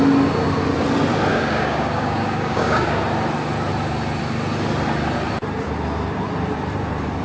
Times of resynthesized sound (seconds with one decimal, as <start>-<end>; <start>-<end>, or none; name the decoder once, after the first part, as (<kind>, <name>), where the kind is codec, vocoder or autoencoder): 1.3-3.0 (codec, DAC)